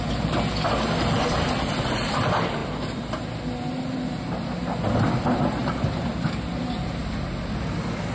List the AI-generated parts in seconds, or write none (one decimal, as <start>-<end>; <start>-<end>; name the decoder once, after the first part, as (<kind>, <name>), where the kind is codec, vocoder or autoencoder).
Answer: none